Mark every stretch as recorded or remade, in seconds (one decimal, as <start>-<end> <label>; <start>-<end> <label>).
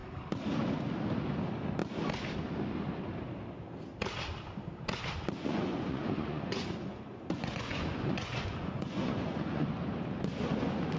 0.0-5.4 recorded; 5.4-9.7 remade; 9.7-11.0 recorded